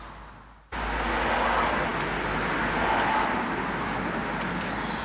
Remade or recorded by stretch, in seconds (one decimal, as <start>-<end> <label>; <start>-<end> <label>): 0.0-5.0 recorded